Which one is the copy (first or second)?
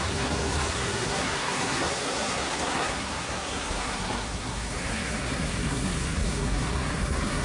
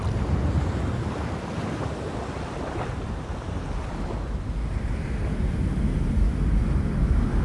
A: first